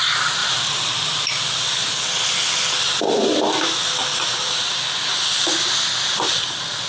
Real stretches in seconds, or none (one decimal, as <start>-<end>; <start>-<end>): 0.0-0.4; 1.3-4.0; 4.8-6.9